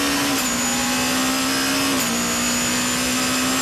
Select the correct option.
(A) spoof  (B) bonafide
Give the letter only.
B